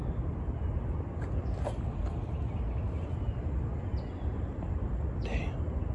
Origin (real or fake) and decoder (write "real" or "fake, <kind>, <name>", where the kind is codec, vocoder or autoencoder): real